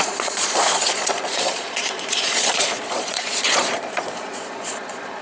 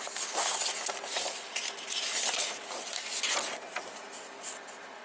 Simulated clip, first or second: first